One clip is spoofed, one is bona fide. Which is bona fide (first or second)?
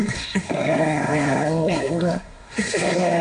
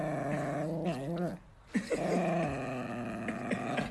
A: second